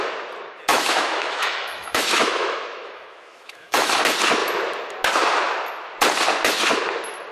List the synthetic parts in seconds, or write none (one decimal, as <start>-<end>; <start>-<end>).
0.7-4.0